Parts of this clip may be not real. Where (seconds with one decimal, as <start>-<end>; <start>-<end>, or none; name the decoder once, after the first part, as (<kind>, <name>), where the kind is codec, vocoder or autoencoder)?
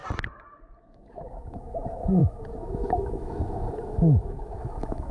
0.8-5.1 (autoencoder, DAC-VAE)